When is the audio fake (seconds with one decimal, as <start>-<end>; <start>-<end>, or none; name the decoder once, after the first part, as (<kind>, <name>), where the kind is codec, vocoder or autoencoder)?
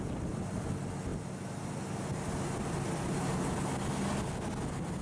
none